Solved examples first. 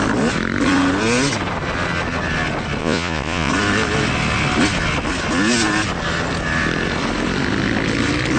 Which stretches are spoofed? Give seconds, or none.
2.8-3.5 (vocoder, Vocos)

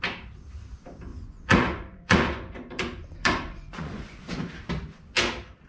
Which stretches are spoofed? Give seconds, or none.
1.1-4.5 (vocoder, Vocos)

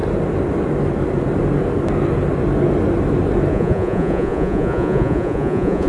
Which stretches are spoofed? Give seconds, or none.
3.5-5.9 (vocoder, Vocos)

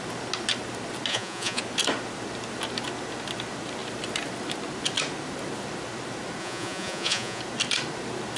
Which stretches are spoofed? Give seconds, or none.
1.1-1.6 (vocoder, Vocos); 6.4-7.4